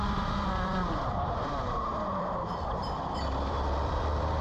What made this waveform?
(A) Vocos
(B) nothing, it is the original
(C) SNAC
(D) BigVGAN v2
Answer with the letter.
D